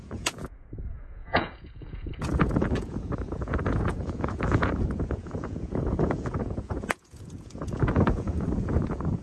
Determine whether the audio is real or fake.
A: fake